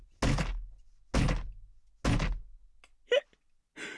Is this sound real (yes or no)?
yes